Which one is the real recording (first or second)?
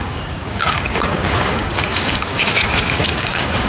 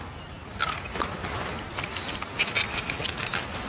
second